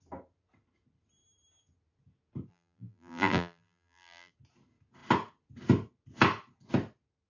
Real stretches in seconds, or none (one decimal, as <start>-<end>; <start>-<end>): 0.0-2.5; 4.3-7.3